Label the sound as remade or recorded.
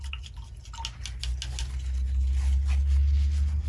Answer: recorded